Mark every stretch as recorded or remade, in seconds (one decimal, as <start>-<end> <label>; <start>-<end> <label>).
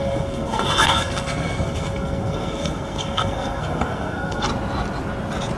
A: 0.0-4.5 remade; 4.5-5.6 recorded